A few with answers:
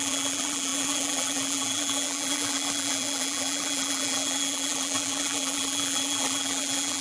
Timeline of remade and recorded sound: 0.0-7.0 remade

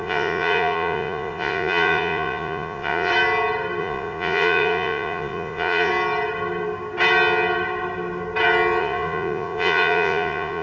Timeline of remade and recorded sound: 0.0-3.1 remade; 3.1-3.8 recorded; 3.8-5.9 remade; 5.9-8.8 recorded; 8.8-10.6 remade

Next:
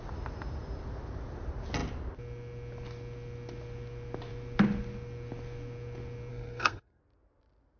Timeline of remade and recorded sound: 0.0-6.3 recorded; 6.3-7.0 remade; 7.0-7.8 recorded

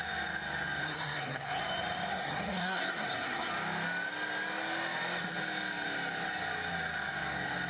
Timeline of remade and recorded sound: 0.0-0.8 recorded; 0.8-1.6 remade; 1.6-2.1 recorded; 2.1-3.5 remade; 3.5-7.7 recorded